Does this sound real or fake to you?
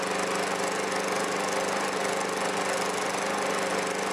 real